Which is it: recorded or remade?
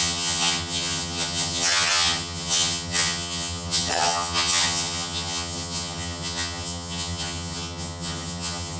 remade